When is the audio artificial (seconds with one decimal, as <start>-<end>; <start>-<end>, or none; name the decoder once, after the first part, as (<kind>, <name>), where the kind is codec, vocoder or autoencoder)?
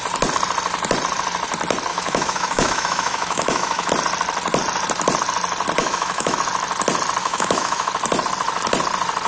1.9-3.9 (autoencoder, DAC-VAE); 5.8-6.4; 7.2-7.9